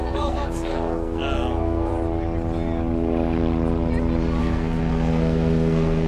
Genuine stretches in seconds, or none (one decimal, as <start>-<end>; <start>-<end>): 1.9-4.4